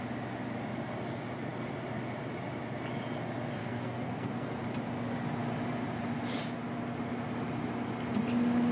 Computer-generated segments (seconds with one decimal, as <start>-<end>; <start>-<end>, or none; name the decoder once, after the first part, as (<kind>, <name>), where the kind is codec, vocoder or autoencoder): 3.6-4.6 (codec, SNAC)